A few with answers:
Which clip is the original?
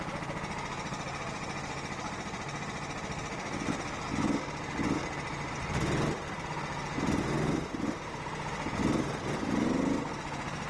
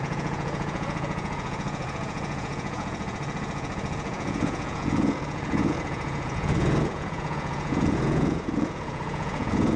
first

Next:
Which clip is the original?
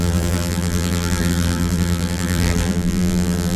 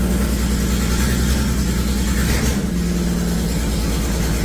second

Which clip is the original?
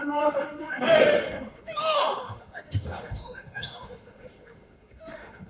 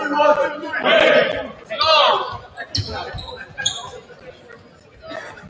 second